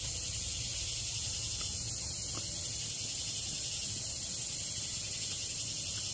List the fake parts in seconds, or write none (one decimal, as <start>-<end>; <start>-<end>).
none